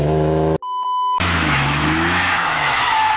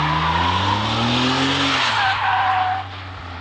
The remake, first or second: first